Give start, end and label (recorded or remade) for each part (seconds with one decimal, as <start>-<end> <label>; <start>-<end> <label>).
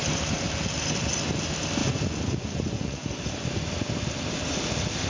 0.0-1.8 recorded; 1.8-3.1 remade; 3.1-5.1 recorded